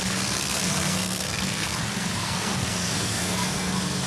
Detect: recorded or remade remade